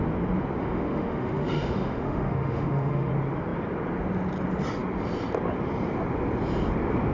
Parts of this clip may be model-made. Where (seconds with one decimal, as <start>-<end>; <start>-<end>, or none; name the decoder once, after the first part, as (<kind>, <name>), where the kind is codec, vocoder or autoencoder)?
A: 0.6-3.1 (autoencoder, DAC-VAE)